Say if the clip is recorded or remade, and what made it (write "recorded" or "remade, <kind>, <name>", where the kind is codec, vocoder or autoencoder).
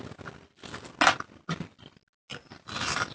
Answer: recorded